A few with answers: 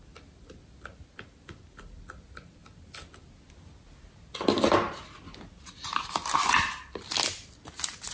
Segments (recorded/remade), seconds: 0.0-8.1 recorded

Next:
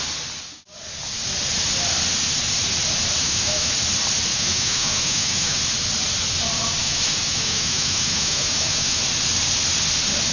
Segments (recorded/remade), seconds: 0.0-3.2 recorded; 3.2-3.7 remade; 3.7-4.3 recorded; 4.3-5.6 remade; 5.6-6.8 recorded; 6.8-9.0 remade; 9.0-10.3 recorded

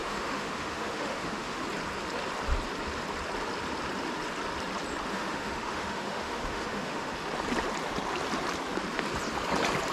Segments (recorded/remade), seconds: 0.0-1.6 remade; 1.6-5.1 recorded; 5.1-7.1 remade; 7.1-9.9 recorded

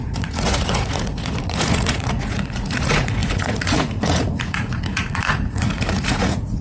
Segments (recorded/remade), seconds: 0.0-6.6 remade

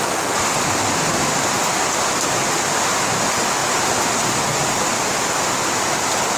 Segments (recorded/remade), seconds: 0.0-6.4 recorded